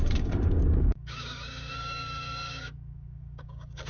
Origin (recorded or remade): remade